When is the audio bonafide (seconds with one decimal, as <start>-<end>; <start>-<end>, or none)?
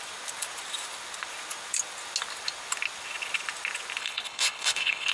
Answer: 0.0-4.0